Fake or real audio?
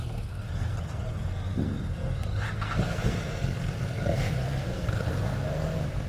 fake